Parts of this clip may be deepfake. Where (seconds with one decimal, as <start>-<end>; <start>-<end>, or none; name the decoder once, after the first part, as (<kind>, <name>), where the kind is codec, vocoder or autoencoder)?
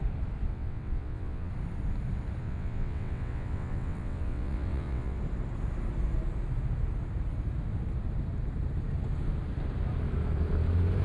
0.5-1.5 (vocoder, WaveNeXt); 2.4-5.2